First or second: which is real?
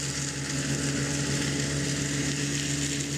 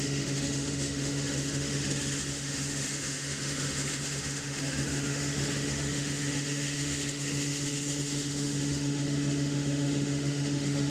first